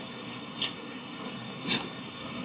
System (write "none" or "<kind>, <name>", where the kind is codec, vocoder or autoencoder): codec, SNAC